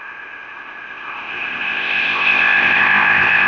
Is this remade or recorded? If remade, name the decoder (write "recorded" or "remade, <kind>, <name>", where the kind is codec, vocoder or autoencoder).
remade, codec, ZipCodec